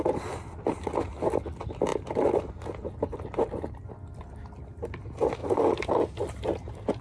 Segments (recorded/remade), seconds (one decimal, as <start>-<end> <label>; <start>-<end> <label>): 0.0-7.0 recorded